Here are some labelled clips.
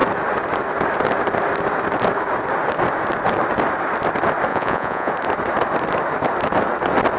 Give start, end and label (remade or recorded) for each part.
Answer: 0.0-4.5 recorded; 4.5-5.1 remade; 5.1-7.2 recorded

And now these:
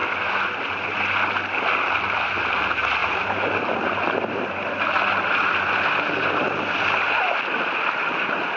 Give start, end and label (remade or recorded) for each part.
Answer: 0.0-8.6 recorded

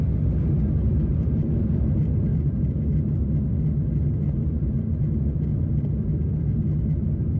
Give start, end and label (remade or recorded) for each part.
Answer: 0.0-1.1 recorded; 1.1-1.8 remade; 1.8-2.3 recorded; 2.3-3.0 remade; 3.0-7.4 recorded

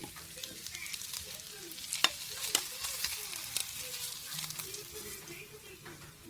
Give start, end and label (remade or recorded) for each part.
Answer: 0.0-6.3 recorded

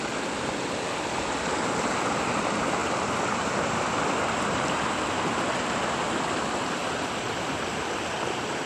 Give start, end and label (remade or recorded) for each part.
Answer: 0.0-2.8 recorded; 2.8-4.7 remade; 4.7-6.8 recorded; 6.8-7.8 remade; 7.8-8.7 recorded